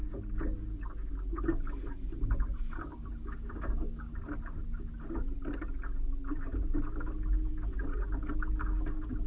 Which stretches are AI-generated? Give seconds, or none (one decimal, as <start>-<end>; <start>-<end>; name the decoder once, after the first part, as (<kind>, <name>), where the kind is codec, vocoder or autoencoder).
2.9-4.1 (codec, DAC)